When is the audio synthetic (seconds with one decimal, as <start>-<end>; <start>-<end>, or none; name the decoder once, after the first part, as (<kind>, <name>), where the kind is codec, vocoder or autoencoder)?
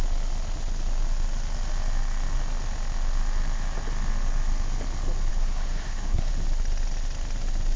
5.3-6.3 (codec, SNAC)